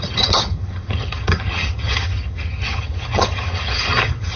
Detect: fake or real fake